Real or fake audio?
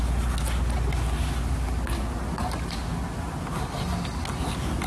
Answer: real